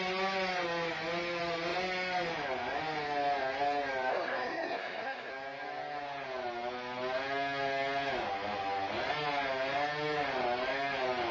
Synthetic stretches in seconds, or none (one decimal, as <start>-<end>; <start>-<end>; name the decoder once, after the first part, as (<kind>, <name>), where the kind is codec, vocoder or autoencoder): 4.1-5.3 (codec, SNAC)

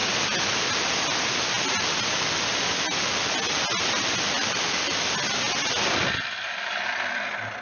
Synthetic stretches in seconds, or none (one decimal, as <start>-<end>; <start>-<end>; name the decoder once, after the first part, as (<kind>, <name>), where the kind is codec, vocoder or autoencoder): none

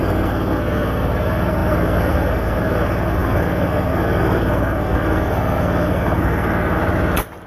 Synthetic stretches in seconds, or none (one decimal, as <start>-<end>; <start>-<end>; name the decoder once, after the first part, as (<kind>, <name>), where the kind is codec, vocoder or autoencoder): 0.0-6.8 (codec, SNAC)

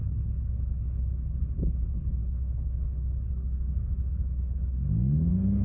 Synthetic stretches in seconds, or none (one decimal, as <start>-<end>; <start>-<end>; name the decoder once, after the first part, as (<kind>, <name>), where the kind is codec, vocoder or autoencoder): 0.0-5.6 (codec, HILCodec)